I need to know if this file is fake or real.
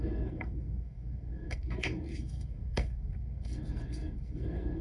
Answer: fake